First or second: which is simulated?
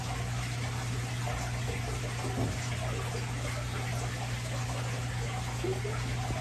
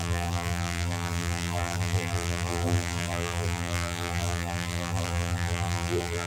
second